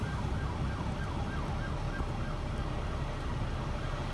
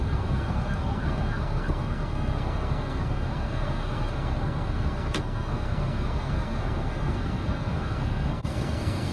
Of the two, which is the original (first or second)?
first